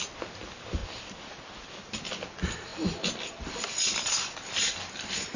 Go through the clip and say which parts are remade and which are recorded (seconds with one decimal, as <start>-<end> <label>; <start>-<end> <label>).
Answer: 0.0-5.4 recorded